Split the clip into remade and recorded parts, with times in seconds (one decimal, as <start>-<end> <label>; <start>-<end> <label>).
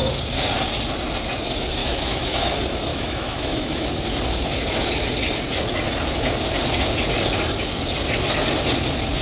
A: 0.0-1.8 recorded; 1.8-2.5 remade; 2.5-2.9 recorded; 2.9-4.0 remade; 4.0-9.2 recorded